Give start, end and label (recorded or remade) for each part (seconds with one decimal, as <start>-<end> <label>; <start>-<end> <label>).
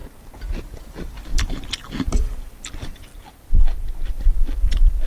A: 0.0-0.9 recorded; 0.9-3.1 remade; 3.1-4.1 recorded; 4.1-5.1 remade